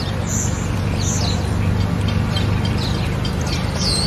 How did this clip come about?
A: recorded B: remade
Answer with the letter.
A